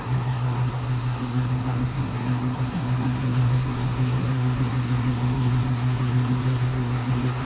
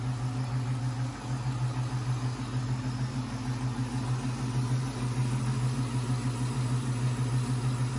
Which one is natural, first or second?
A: second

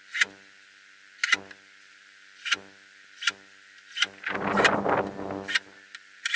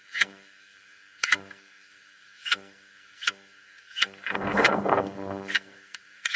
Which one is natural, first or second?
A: first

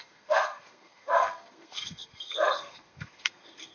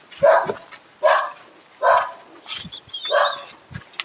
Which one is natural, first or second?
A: second